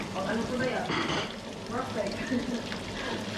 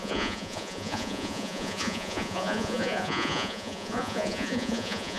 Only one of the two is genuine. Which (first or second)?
first